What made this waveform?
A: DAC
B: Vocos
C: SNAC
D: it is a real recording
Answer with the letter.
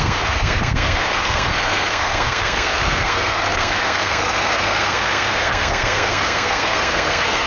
C